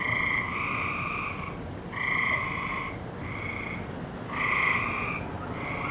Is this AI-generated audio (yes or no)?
no